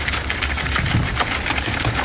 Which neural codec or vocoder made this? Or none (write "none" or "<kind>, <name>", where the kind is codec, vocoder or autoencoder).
none